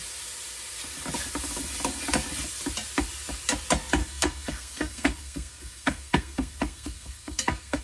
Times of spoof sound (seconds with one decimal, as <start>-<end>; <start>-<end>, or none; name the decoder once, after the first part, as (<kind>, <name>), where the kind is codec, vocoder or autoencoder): 4.0-7.8 (codec, SNAC)